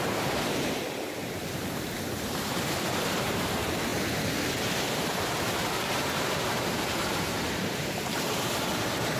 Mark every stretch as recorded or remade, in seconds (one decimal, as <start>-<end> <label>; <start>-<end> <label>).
0.0-1.2 remade; 1.2-2.5 recorded; 2.5-3.9 remade; 3.9-4.9 recorded; 4.9-9.2 remade